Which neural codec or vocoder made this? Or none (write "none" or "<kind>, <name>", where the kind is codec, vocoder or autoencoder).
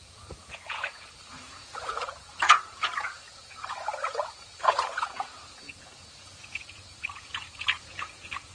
vocoder, Vocos